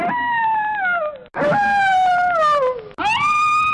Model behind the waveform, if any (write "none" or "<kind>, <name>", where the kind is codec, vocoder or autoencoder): none